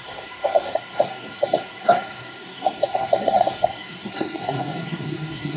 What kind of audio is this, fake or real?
fake